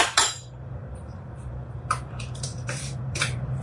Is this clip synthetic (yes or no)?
yes